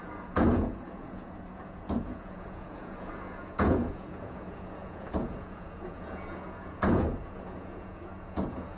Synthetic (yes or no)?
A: yes